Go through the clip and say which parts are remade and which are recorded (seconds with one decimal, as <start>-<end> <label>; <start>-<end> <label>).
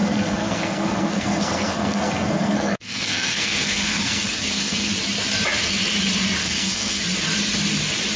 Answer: 0.0-4.9 remade; 4.9-6.4 recorded; 6.4-7.0 remade; 7.0-8.2 recorded